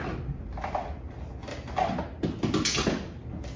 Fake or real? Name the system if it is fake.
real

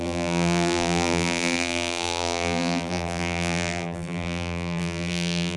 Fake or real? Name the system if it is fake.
fake, vocoder, BigVGAN v2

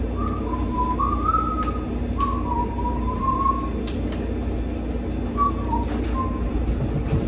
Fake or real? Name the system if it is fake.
real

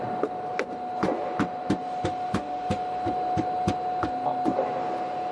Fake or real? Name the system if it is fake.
real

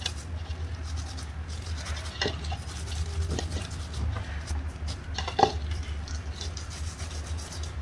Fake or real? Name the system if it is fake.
real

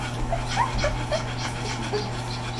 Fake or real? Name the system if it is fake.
real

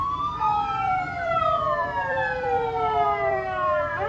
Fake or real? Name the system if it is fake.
fake, vocoder, BigVGAN v2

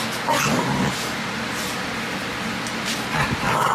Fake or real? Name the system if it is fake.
real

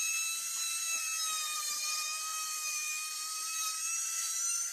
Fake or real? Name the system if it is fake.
fake, vocoder, BigVGAN v2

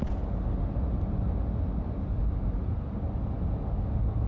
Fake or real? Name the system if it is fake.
real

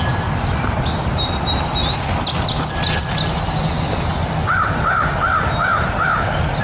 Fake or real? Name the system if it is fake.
real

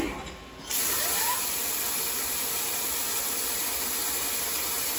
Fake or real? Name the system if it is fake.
real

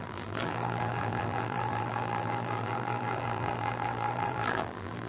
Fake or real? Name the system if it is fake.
fake, vocoder, BigVGAN v2